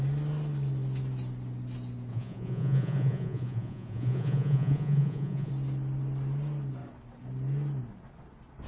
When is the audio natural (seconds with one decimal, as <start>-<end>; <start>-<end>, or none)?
0.0-2.1; 5.5-8.7

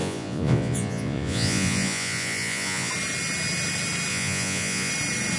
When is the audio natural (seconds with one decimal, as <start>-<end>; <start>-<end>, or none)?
2.9-4.1; 4.9-5.4

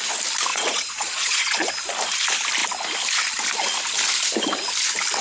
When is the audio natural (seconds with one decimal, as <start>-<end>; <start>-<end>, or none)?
0.0-0.5; 1.7-5.2

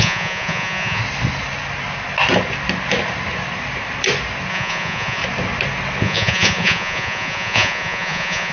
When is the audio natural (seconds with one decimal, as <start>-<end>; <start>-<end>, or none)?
1.0-4.5; 5.2-6.0

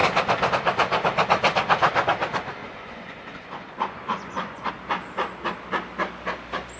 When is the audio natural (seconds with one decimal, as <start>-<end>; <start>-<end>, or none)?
0.0-2.6; 4.7-6.8